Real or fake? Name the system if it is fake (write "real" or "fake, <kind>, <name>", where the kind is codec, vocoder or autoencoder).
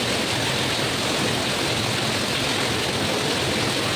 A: real